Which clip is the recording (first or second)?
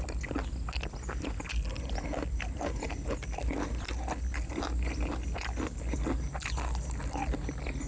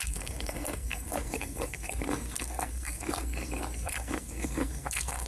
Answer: first